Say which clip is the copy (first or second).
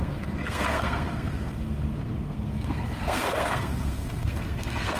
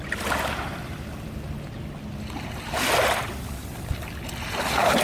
first